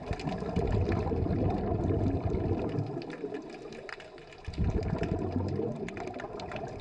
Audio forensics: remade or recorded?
recorded